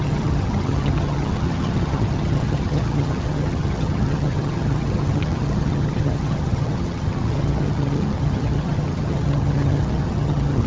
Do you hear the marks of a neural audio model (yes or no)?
yes